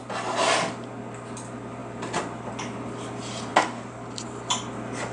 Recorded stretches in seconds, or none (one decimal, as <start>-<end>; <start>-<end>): 0.0-5.1